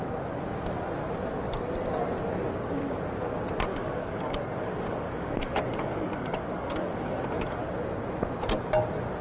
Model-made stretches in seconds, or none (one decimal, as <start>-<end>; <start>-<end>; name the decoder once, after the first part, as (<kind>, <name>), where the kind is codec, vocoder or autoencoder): 3.7-7.6 (codec, DAC)